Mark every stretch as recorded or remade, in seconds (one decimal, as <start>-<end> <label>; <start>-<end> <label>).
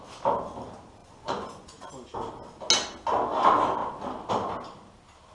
0.0-1.0 recorded; 1.0-1.9 remade; 1.9-5.3 recorded